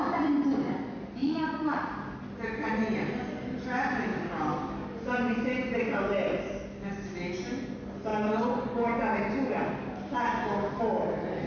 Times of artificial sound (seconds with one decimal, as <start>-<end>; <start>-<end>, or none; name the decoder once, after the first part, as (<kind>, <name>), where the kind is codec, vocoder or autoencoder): 1.2-1.9 (vocoder, Vocos)